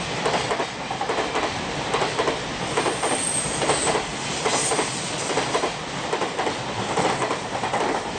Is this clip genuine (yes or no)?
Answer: yes